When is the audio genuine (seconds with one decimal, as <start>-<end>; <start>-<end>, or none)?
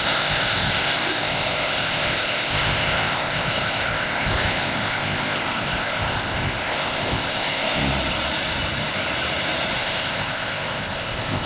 7.8-9.8